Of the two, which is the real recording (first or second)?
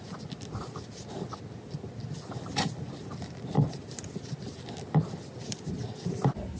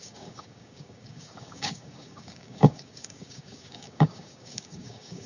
first